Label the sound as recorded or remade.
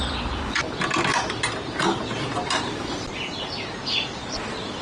recorded